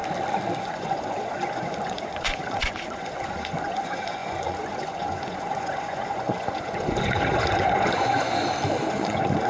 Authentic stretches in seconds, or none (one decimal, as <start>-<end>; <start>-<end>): 0.0-0.6; 8.4-8.9